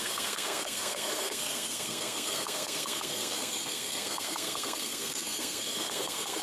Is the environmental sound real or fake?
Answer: fake